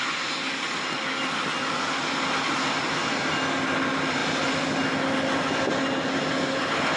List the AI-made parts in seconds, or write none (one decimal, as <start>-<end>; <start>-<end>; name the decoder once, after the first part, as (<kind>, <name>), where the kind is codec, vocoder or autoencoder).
none